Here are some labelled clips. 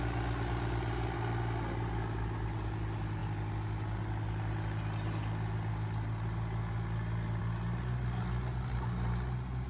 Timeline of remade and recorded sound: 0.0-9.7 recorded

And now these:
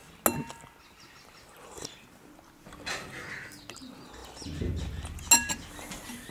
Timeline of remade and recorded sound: 0.0-6.3 recorded

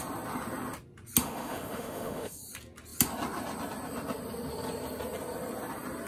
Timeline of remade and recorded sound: 0.0-1.2 recorded; 1.2-2.4 remade; 2.4-6.1 recorded

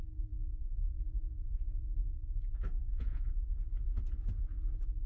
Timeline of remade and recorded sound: 0.0-0.5 recorded; 0.5-1.6 remade; 1.6-2.8 recorded; 2.8-3.5 remade; 3.5-5.1 recorded

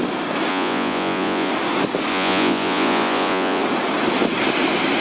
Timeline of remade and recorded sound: 0.0-0.5 recorded; 0.5-1.5 remade; 1.5-2.1 recorded; 2.1-3.6 remade; 3.6-5.0 recorded

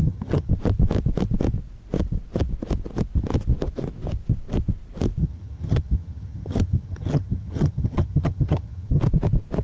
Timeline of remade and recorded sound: 0.0-0.5 remade; 0.5-5.2 recorded; 5.2-9.0 remade; 9.0-9.6 recorded

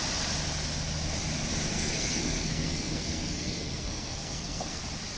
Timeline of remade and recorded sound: 0.0-1.7 recorded; 1.7-4.8 remade; 4.8-5.2 recorded

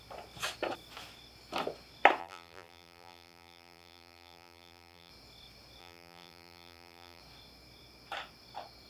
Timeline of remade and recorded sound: 0.0-2.2 recorded; 2.2-5.1 remade; 5.1-5.8 recorded; 5.8-7.2 remade; 7.2-8.9 recorded